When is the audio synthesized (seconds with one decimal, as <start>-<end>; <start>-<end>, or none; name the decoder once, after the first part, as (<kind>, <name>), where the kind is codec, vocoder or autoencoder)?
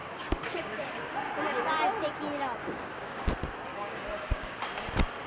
0.0-1.0 (codec, DAC); 2.6-3.3; 3.7-4.6